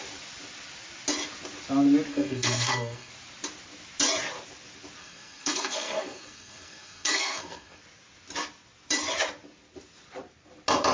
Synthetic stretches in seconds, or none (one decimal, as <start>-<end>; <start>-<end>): 2.1-3.1; 5.0-7.8